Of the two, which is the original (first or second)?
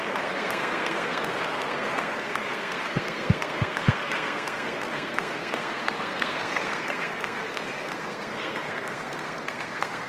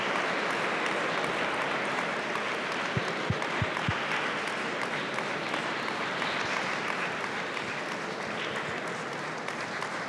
second